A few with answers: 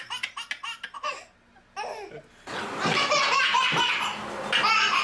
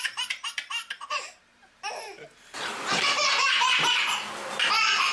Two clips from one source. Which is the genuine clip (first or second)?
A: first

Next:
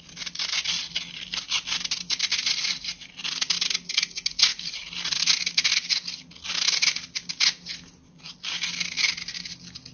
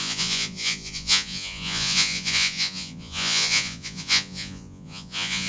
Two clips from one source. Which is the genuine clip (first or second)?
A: first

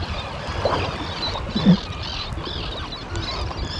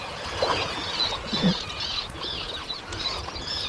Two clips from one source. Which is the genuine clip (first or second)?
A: first